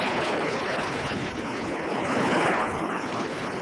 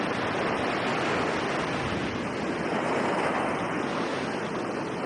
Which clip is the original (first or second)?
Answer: second